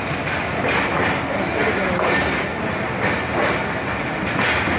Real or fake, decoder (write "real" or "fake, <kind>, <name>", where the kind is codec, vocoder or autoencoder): real